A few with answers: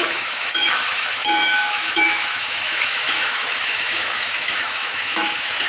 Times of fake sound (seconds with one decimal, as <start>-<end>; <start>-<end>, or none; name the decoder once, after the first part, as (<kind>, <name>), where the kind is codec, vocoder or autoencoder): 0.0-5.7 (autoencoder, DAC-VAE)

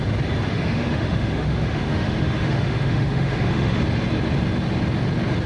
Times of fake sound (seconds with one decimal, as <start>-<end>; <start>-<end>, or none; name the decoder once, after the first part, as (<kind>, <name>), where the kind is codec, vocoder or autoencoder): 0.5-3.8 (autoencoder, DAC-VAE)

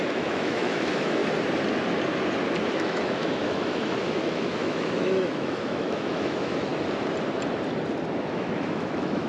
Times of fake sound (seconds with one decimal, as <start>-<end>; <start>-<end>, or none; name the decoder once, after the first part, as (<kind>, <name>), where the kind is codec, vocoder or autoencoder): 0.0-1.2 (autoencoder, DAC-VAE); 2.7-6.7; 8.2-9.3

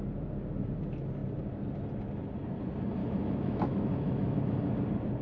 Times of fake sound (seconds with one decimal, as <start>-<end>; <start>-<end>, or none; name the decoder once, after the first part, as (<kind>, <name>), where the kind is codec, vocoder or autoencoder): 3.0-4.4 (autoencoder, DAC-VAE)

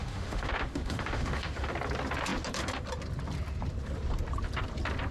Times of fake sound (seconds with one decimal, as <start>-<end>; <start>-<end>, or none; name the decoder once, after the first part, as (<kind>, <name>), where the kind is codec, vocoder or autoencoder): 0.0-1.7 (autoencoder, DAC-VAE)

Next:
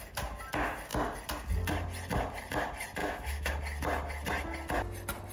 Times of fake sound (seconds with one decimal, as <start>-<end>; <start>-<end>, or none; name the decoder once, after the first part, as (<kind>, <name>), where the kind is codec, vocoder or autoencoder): 3.0-3.5 (autoencoder, DAC-VAE)

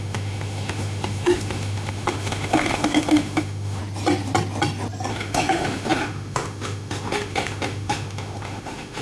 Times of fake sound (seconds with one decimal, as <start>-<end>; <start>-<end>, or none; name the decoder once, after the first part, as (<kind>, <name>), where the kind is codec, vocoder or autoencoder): 0.0-3.8 (autoencoder, DAC-VAE); 5.1-9.0

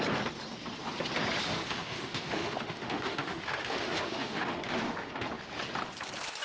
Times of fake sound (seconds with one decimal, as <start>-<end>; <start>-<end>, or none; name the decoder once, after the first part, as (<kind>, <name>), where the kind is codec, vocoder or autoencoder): 1.5-5.3 (autoencoder, DAC-VAE)